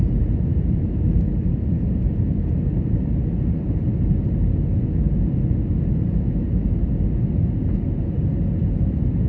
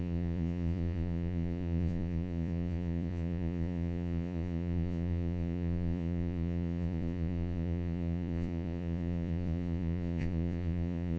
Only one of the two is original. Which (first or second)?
first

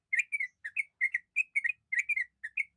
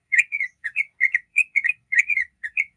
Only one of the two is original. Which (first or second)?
first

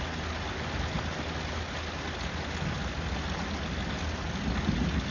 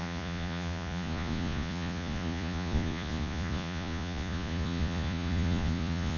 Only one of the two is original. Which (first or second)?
first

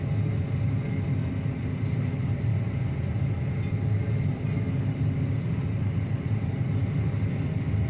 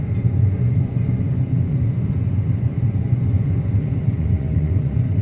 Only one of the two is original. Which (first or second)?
first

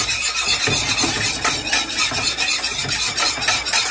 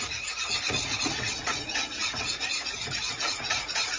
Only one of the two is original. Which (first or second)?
first